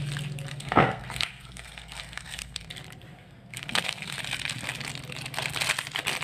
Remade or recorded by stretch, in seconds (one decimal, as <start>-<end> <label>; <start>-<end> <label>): 0.0-0.5 recorded; 0.5-2.7 remade; 2.7-3.1 recorded; 3.1-4.2 remade; 4.2-6.2 recorded